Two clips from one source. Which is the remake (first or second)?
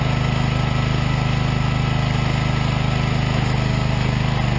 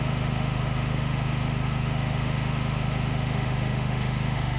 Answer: second